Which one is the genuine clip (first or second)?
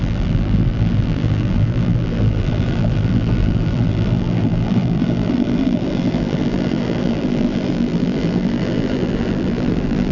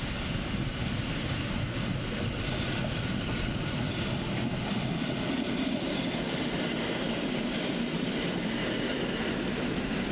second